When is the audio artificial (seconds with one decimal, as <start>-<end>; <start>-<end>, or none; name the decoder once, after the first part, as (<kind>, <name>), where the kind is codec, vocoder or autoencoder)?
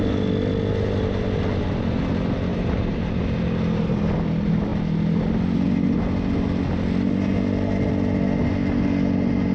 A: 2.5-3.2 (vocoder, BigVGAN v2)